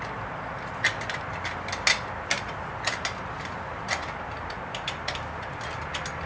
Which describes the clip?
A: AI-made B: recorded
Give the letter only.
B